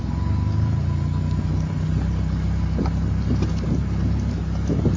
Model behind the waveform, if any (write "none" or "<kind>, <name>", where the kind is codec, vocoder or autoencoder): none